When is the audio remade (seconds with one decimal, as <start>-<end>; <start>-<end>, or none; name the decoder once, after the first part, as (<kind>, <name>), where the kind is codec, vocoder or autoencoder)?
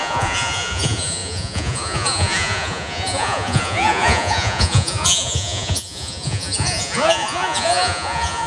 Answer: 0.0-8.5 (vocoder, Vocos)